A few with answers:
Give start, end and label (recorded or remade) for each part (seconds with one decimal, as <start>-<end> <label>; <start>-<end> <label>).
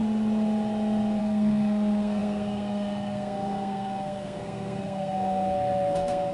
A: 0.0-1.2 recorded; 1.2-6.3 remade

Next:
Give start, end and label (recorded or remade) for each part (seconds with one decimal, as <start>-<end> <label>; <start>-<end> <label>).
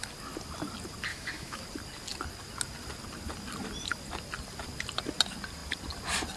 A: 0.0-1.1 recorded; 1.1-1.6 remade; 1.6-6.4 recorded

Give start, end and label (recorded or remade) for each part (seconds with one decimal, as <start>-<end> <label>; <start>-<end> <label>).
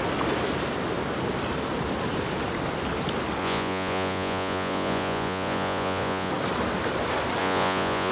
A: 0.0-3.4 recorded; 3.4-6.3 remade; 6.3-7.4 recorded; 7.4-8.1 remade